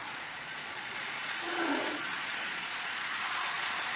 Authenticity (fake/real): fake